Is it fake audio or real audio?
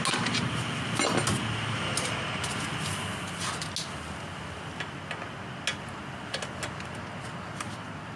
real